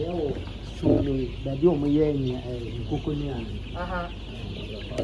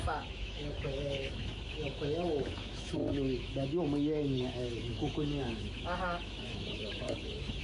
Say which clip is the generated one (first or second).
second